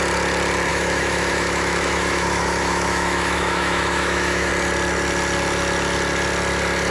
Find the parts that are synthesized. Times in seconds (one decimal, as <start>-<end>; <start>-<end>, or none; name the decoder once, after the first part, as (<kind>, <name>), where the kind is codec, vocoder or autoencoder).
0.7-4.5 (autoencoder, DAC-VAE)